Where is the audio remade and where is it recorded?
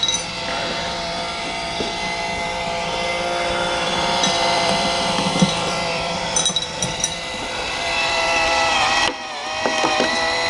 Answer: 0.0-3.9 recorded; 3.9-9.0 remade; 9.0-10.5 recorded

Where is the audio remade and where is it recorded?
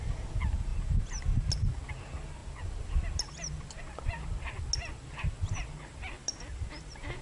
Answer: 0.0-2.4 recorded; 2.4-3.8 remade; 3.8-6.2 recorded; 6.2-7.2 remade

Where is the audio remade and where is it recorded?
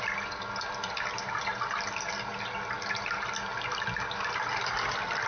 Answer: 0.0-5.3 recorded